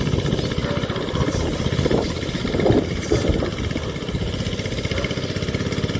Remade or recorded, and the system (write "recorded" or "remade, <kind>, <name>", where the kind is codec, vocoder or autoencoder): recorded